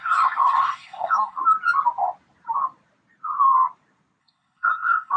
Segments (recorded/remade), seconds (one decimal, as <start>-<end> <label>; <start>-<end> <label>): 0.0-1.4 remade; 1.4-4.2 recorded; 4.2-5.2 remade